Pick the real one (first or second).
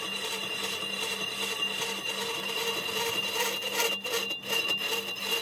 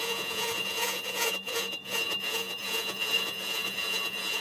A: first